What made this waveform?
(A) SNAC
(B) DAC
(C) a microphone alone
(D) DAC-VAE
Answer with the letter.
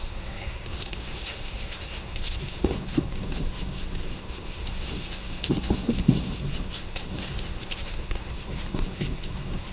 A